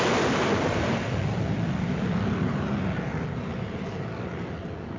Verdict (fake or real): real